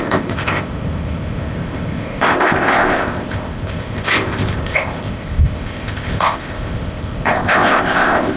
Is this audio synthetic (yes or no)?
yes